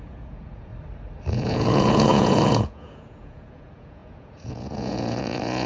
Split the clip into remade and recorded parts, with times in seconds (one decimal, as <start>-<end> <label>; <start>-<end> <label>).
0.0-0.7 remade; 0.7-1.3 recorded; 1.3-5.7 remade